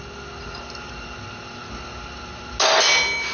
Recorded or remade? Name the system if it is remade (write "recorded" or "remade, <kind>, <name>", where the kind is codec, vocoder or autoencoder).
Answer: recorded